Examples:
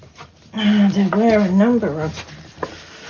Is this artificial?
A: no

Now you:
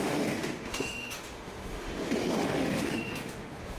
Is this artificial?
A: yes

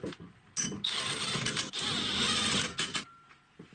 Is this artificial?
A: no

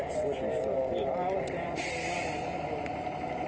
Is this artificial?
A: no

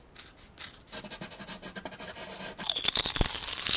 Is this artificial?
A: no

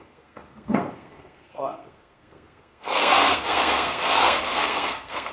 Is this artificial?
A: yes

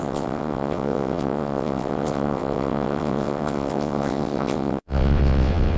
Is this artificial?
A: yes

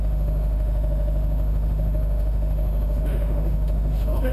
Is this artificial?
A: yes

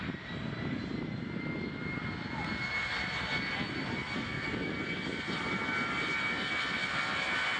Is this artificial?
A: no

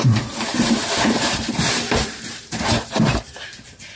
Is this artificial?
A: yes